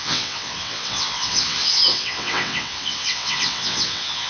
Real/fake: fake